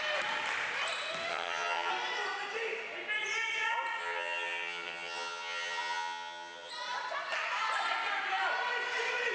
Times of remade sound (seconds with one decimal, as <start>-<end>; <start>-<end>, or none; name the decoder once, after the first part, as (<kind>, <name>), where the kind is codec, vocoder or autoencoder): 1.3-1.9 (vocoder, HiFi-GAN); 4.0-6.7